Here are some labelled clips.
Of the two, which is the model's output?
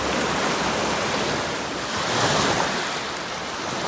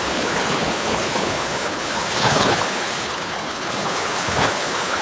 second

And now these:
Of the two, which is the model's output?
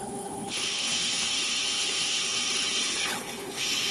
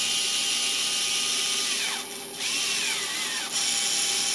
first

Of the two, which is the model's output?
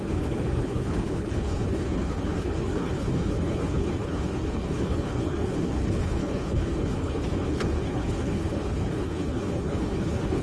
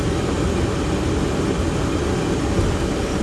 first